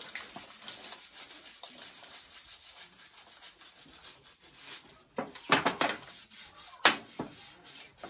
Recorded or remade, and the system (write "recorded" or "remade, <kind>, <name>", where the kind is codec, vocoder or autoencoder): recorded